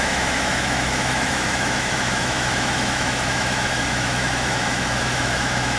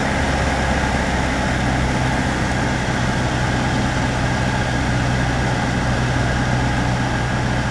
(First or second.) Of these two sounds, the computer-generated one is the first